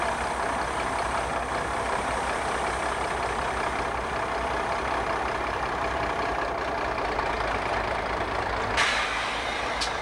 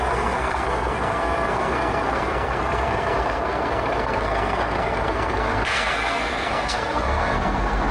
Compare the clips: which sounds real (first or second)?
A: first